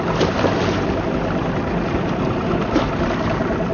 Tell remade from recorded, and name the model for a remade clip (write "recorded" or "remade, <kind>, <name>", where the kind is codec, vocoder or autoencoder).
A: recorded